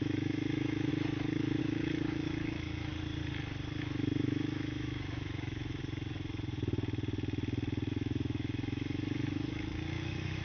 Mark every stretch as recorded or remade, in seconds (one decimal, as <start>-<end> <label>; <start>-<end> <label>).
0.0-0.9 remade; 0.9-1.6 recorded; 1.6-2.9 remade; 2.9-3.8 recorded; 3.8-5.8 remade; 5.8-7.9 recorded; 7.9-10.4 remade